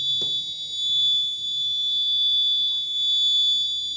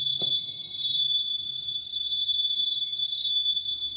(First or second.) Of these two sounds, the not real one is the second